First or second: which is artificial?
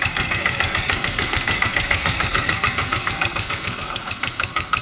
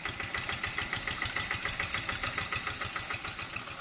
first